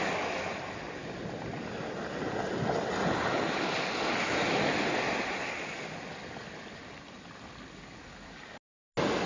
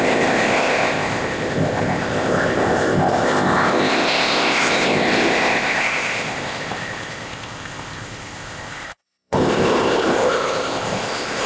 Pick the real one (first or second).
first